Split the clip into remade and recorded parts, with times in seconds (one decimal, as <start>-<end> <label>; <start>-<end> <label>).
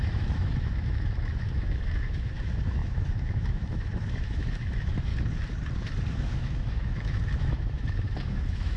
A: 0.0-5.1 remade; 5.1-6.1 recorded; 6.1-8.8 remade